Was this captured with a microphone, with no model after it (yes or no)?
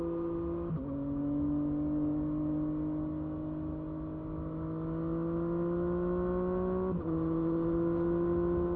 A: yes